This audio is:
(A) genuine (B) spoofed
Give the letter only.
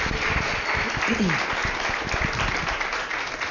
A